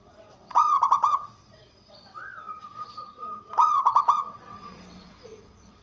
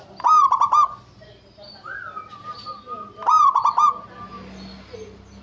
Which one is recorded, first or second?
second